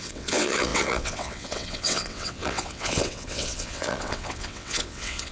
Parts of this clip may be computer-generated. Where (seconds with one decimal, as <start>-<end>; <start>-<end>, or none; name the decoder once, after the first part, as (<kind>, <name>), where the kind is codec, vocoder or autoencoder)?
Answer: 0.0-5.3 (vocoder, WaveNeXt)